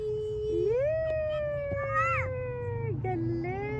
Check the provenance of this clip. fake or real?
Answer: real